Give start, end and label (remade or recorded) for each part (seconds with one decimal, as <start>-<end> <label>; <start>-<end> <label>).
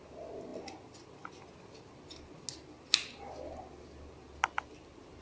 0.0-5.2 recorded